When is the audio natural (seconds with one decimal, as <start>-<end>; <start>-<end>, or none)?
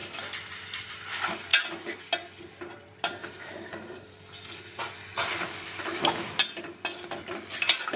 0.0-3.2; 3.7-8.0